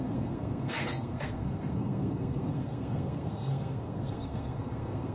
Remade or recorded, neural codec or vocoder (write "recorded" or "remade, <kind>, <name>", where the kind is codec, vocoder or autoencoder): remade, codec, SNAC